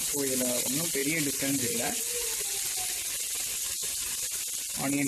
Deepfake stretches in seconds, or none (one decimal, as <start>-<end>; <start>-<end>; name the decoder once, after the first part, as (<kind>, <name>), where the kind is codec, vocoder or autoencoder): 3.8-4.5 (vocoder, BigVGAN v2)